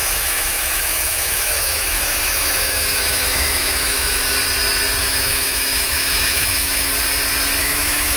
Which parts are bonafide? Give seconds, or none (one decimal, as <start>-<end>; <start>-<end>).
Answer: 4.2-5.0; 6.9-7.6